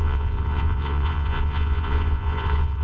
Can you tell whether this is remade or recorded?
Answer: remade